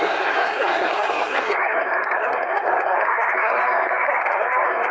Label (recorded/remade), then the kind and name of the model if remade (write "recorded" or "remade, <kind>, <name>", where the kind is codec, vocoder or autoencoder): remade, codec, SNAC